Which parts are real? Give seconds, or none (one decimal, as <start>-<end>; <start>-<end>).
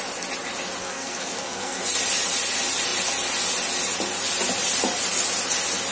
0.0-0.8; 1.8-5.9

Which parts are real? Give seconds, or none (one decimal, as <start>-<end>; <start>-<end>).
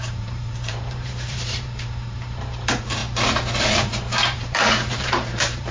3.0-3.6